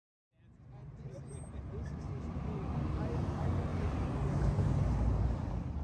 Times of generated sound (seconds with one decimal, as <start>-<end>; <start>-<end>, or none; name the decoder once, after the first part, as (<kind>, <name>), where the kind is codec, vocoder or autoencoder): none